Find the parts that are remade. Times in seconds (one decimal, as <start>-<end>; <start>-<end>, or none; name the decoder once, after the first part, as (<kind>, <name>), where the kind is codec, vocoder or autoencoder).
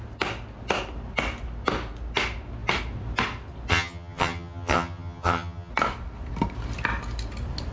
3.7-5.7 (vocoder, HiFi-GAN)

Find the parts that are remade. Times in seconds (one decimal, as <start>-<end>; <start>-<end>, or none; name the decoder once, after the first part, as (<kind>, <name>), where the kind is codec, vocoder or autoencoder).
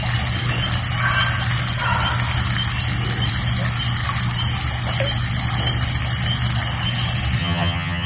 7.4-8.1 (vocoder, HiFi-GAN)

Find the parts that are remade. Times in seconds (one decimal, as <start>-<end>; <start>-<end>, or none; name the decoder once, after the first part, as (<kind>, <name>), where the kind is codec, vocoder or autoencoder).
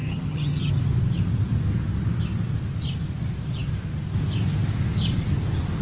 0.0-0.7 (vocoder, HiFi-GAN)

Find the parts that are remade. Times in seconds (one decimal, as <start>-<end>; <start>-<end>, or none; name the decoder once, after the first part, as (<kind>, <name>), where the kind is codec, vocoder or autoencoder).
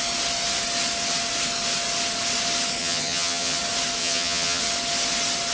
2.8-3.6 (vocoder, HiFi-GAN); 4.0-4.6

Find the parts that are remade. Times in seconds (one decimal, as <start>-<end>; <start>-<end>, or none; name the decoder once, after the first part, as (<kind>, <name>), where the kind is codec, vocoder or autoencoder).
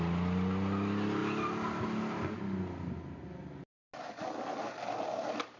none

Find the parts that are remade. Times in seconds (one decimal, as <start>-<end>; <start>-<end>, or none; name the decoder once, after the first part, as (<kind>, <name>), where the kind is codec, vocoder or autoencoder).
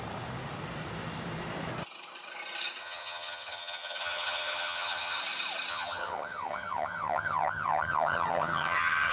2.8-5.2 (vocoder, HiFi-GAN); 5.7-9.1